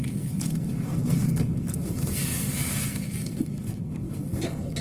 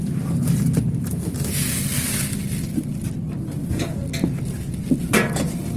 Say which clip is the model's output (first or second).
first